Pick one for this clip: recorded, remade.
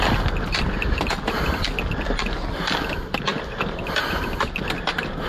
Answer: recorded